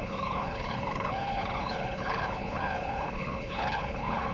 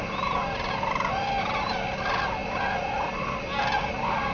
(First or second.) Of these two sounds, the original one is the second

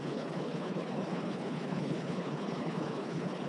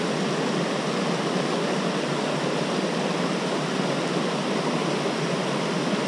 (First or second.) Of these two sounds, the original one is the second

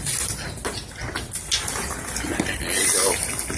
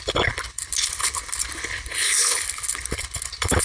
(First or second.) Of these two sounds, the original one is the first